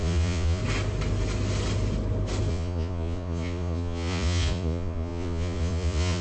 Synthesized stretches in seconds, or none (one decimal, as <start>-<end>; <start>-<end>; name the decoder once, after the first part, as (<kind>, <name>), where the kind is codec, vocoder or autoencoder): 0.0-0.6 (vocoder, Vocos); 2.5-6.2